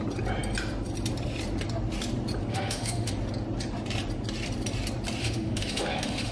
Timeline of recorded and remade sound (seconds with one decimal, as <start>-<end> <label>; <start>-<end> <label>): 0.0-2.5 recorded; 2.5-3.1 remade; 3.1-5.2 recorded; 5.2-6.3 remade